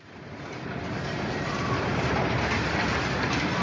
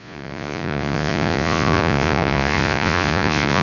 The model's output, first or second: second